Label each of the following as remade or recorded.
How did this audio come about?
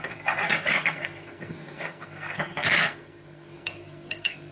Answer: remade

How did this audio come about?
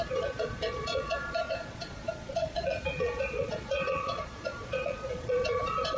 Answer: remade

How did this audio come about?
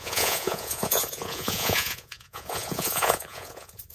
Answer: remade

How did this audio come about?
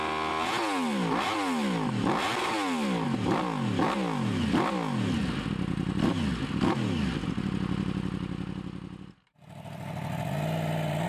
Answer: recorded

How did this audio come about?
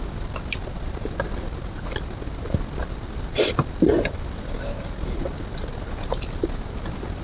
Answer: recorded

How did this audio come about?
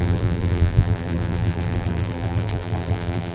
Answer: remade